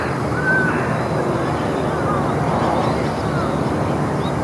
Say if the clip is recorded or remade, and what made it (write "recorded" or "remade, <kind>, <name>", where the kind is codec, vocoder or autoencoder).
recorded